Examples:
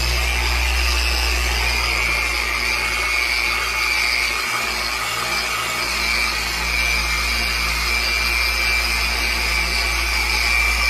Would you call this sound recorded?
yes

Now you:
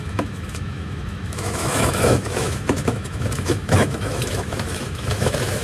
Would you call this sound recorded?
no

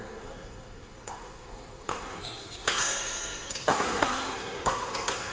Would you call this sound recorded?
no